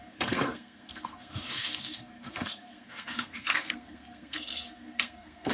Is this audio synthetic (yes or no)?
yes